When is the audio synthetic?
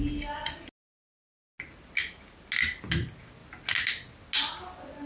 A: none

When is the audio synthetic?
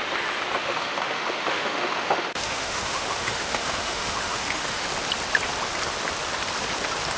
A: 0.6-4.9 (autoencoder, DAC-VAE)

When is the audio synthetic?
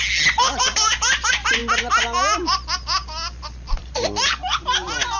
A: 3.8-5.2 (vocoder, BigVGAN v2)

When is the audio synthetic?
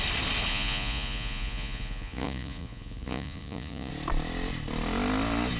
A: 0.5-3.9 (vocoder, Vocos)